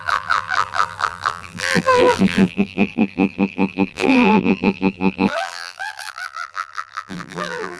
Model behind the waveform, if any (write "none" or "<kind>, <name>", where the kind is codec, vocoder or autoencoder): vocoder, BigVGAN v2